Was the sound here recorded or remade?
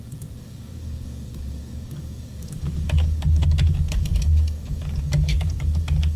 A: remade